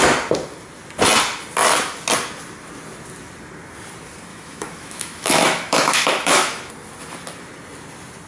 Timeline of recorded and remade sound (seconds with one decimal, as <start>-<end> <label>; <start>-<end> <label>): 0.0-4.3 recorded; 4.3-6.7 remade; 6.7-8.3 recorded